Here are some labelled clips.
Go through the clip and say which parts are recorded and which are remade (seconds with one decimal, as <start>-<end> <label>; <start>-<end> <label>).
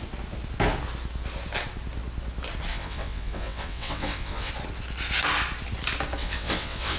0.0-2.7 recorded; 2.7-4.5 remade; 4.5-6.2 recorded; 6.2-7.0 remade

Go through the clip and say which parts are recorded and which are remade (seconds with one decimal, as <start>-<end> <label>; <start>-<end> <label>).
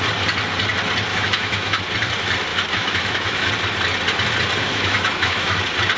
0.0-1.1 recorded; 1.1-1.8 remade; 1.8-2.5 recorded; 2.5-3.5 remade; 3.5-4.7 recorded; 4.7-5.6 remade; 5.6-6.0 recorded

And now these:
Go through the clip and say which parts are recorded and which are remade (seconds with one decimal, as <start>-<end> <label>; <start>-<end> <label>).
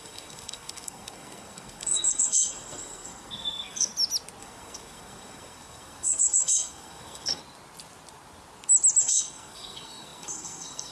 0.0-3.9 remade; 3.9-4.4 recorded; 4.4-7.4 remade; 7.4-9.0 recorded; 9.0-10.9 remade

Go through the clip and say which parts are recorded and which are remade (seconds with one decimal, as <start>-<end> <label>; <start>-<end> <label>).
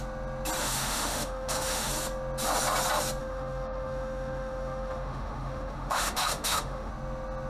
0.0-0.6 recorded; 0.6-1.9 remade; 1.9-3.2 recorded; 3.2-6.9 remade; 6.9-7.5 recorded